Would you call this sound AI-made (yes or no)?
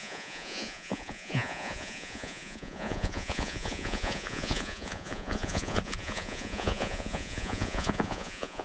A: yes